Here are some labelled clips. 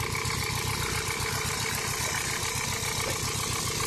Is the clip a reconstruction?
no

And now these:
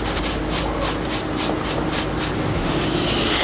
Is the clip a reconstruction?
no